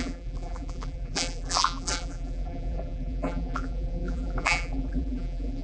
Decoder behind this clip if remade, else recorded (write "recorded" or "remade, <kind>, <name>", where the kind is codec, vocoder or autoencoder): remade, vocoder, BigVGAN v2